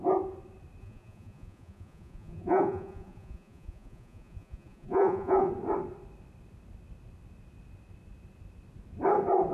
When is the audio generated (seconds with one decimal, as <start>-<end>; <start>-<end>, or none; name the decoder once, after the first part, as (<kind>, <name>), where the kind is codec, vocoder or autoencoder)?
0.8-5.5 (vocoder, Vocos)

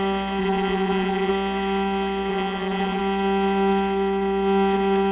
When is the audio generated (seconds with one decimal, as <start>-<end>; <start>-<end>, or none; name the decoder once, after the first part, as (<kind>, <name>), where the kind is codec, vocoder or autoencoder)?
0.4-1.3 (vocoder, Vocos); 2.3-3.0

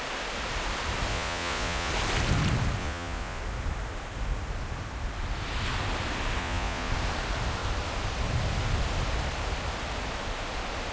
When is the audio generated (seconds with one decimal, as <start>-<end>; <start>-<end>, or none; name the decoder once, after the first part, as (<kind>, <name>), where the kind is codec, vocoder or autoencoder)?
1.1-1.9 (vocoder, Vocos); 2.8-3.4; 6.4-6.9

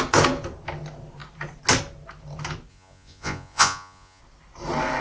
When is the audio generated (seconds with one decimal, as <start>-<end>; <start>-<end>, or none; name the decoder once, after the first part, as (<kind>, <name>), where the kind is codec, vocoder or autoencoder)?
2.7-4.2 (vocoder, Vocos)

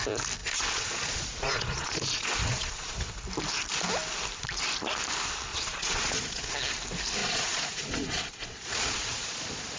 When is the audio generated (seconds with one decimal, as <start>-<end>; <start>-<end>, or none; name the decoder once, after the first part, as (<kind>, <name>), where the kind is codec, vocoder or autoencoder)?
0.4-3.1 (vocoder, Vocos); 5.5-6.4; 7.2-9.8

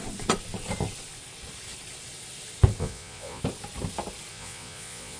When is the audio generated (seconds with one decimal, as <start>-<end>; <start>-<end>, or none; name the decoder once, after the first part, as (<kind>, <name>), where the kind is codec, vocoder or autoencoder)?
2.8-3.4 (vocoder, Vocos); 4.3-5.2

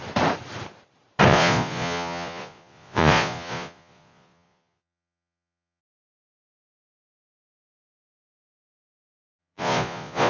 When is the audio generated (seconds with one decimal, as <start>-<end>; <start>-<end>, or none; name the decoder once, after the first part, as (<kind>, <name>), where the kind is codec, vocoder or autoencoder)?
1.3-5.8 (vocoder, Vocos); 9.4-10.3

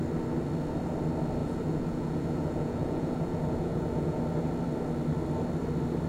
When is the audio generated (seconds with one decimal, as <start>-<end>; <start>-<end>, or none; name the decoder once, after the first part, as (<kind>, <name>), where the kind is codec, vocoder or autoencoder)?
1.4-4.2 (vocoder, Vocos)